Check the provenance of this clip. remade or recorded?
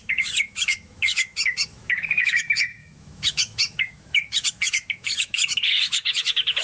remade